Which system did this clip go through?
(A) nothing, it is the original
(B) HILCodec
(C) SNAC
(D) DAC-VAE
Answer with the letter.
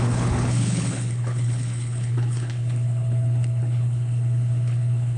B